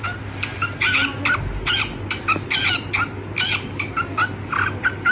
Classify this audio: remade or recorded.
recorded